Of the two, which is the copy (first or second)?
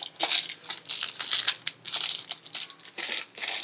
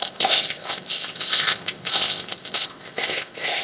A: second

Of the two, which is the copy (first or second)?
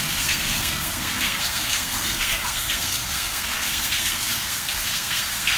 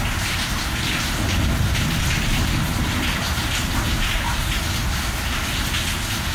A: first